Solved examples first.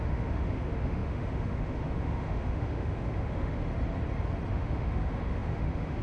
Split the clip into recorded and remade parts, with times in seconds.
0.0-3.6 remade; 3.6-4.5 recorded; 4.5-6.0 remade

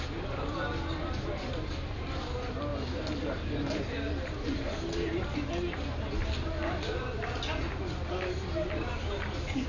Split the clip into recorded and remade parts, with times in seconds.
0.0-9.7 recorded

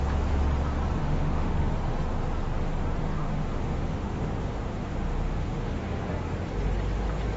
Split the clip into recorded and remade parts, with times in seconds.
0.0-1.0 recorded; 1.0-1.7 remade; 1.7-3.2 recorded; 3.2-6.1 remade; 6.1-7.4 recorded

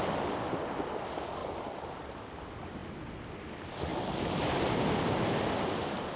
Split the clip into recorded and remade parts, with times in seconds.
0.0-1.4 recorded; 1.4-2.3 remade; 2.3-3.9 recorded; 3.9-5.5 remade; 5.5-6.2 recorded